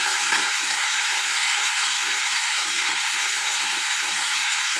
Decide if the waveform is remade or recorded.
remade